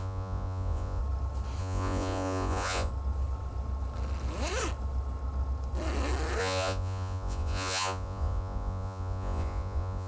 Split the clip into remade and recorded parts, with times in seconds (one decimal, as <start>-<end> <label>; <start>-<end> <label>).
0.0-1.0 remade; 1.0-1.6 recorded; 1.6-2.9 remade; 2.9-6.4 recorded; 6.4-10.1 remade